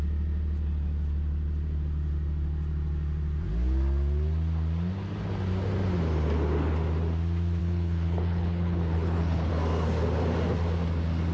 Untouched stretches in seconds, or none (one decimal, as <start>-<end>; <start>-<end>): 0.0-7.6; 9.5-11.3